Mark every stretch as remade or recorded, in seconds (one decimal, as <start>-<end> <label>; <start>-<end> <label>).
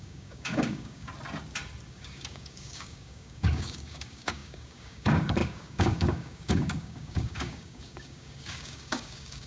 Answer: 0.0-1.1 remade; 1.1-1.9 recorded; 1.9-9.5 remade